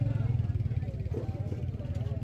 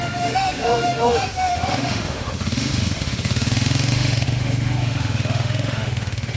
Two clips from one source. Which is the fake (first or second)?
second